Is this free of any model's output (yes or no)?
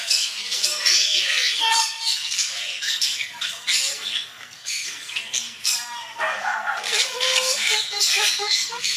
no